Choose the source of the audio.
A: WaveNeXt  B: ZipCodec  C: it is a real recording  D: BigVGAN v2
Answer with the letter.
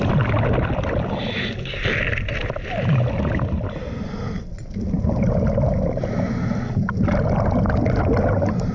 C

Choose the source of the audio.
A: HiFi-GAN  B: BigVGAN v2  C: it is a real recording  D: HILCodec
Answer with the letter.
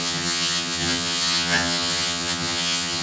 A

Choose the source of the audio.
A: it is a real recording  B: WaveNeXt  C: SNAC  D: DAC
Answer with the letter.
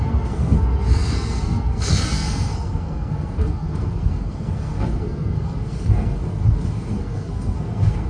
C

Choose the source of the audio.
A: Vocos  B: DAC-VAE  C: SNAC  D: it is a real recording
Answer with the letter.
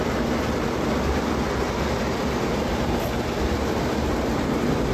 D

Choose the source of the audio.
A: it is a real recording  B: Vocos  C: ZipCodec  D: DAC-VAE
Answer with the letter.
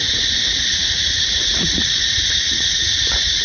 B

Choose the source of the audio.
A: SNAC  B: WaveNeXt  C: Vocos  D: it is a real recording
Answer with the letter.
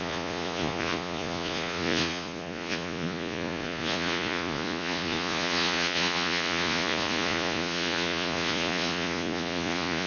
C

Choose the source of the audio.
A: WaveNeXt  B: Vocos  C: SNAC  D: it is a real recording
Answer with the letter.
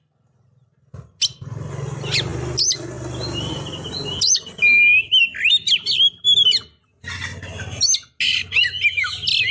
D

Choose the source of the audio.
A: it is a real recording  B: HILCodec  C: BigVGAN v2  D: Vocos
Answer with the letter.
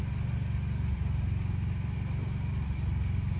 A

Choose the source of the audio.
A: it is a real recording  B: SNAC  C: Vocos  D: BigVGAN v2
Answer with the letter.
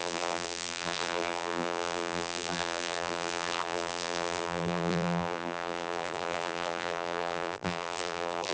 D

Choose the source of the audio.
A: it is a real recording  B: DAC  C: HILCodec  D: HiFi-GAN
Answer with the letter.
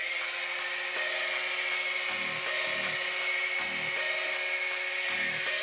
A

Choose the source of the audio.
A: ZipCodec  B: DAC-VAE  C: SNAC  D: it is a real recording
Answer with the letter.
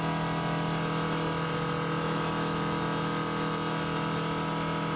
D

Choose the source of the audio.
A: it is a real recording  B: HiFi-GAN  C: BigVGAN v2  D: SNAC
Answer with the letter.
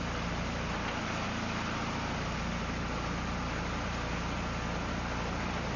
A